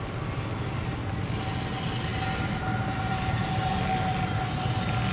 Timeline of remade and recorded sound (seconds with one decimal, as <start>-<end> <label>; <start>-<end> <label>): 0.0-5.1 recorded